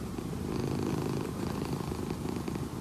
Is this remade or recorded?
recorded